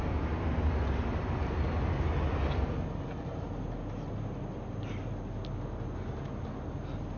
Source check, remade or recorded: recorded